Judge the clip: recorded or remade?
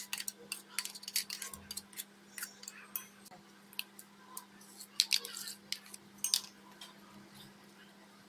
recorded